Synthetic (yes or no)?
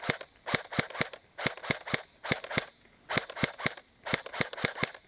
no